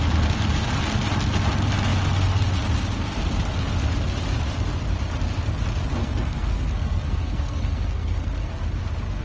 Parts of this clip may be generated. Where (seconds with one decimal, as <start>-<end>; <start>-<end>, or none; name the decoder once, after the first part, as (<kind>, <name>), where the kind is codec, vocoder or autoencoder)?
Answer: 6.0-8.6 (codec, SNAC)